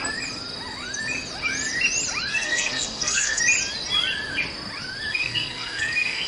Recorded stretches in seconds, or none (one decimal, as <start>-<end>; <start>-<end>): 0.0-2.3; 3.4-5.1